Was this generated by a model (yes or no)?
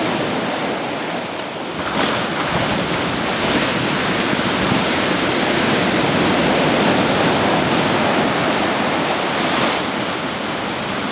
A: no